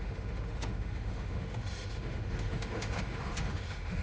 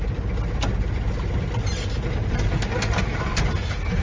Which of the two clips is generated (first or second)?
first